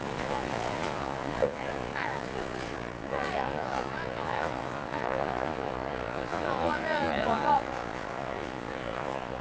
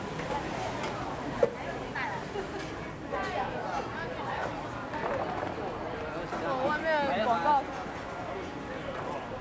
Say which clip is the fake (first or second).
first